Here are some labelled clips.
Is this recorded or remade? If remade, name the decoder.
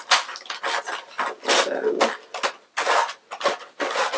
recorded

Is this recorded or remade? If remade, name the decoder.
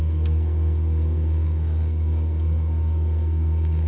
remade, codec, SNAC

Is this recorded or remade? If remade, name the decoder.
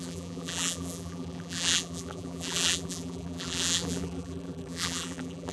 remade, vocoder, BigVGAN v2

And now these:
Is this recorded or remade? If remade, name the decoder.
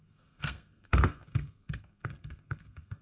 remade, codec, SNAC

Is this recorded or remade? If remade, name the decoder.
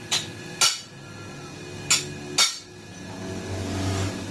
recorded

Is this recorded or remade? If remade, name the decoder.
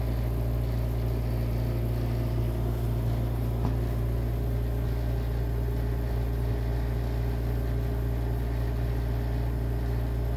recorded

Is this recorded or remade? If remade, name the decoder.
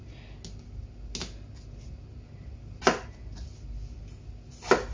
recorded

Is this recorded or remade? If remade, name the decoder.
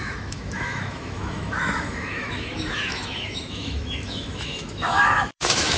remade, autoencoder, DAC-VAE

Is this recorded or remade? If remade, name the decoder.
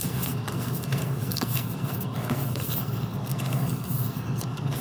remade, codec, SNAC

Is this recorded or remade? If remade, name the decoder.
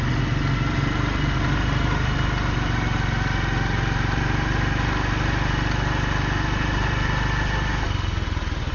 recorded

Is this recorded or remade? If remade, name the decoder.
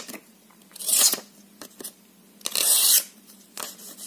remade, vocoder, BigVGAN v2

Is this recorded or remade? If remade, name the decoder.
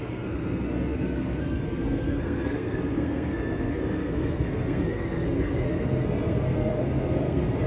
remade, codec, SNAC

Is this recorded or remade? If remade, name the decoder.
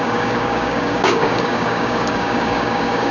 remade, codec, DAC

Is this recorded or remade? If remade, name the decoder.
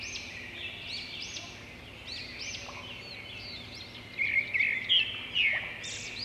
recorded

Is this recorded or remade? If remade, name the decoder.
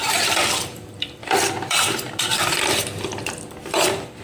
remade, vocoder, BigVGAN v2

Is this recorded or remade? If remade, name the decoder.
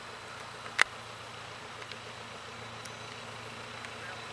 recorded